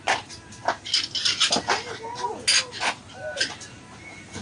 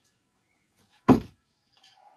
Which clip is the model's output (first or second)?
second